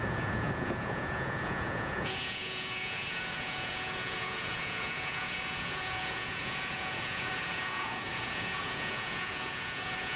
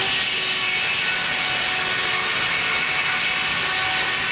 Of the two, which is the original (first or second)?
second